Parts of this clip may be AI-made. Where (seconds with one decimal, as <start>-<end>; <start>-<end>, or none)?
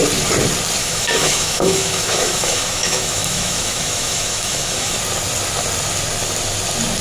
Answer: 0.8-5.0